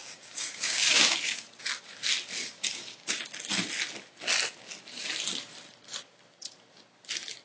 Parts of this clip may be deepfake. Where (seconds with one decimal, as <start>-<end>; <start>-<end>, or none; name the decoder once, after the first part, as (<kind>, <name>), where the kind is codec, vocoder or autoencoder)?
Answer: 0.0-1.5 (codec, DAC); 2.4-3.2